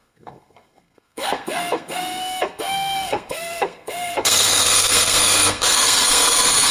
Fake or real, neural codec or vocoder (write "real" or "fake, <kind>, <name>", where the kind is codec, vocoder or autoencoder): fake, codec, SNAC